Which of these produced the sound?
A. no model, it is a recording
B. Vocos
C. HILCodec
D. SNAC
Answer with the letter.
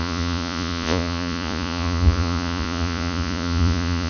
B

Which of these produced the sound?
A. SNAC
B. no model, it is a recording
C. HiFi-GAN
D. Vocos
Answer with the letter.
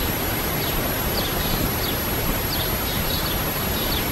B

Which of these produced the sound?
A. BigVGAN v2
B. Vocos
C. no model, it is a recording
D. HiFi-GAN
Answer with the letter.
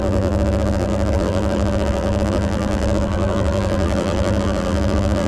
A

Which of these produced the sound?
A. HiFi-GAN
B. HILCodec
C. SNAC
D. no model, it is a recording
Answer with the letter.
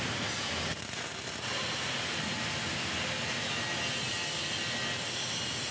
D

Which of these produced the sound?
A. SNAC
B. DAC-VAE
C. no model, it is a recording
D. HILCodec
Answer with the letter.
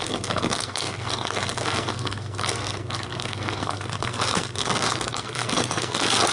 A